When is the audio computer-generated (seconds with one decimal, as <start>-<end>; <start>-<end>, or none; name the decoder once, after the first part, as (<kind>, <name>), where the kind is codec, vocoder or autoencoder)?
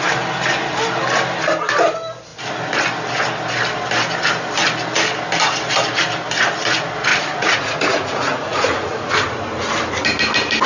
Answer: 7.1-9.1 (vocoder, Vocos)